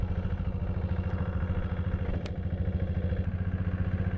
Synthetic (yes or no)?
no